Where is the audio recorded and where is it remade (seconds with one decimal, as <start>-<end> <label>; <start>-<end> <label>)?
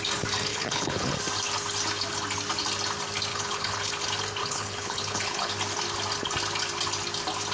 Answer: 0.0-0.5 recorded; 0.5-1.2 remade; 1.2-3.3 recorded; 3.3-3.9 remade; 3.9-4.4 recorded; 4.4-5.5 remade; 5.5-7.5 recorded